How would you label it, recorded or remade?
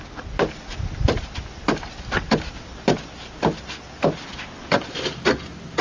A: recorded